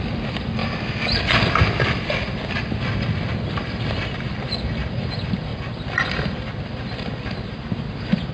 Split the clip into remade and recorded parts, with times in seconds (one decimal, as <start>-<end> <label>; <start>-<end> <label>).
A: 0.0-8.3 recorded

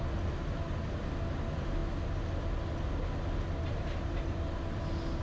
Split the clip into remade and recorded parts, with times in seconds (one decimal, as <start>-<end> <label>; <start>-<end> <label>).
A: 0.0-5.2 recorded